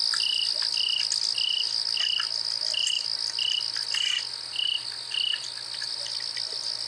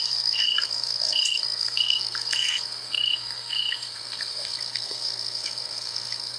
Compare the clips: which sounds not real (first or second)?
second